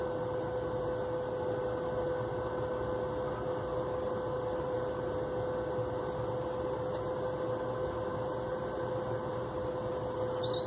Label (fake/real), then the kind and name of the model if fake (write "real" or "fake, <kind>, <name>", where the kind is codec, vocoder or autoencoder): real